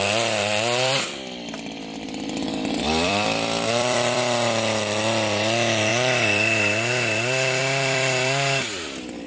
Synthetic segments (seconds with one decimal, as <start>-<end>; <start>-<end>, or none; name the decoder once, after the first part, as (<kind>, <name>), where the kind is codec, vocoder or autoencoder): 0.0-9.3 (vocoder, BigVGAN v2)